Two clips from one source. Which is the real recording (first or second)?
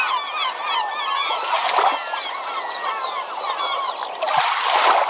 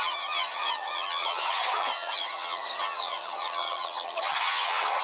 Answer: first